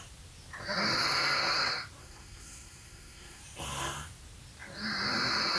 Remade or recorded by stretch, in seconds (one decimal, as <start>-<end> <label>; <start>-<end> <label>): 0.0-2.0 recorded; 2.0-3.4 remade; 3.4-5.6 recorded